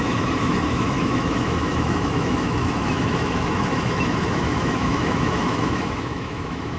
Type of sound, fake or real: fake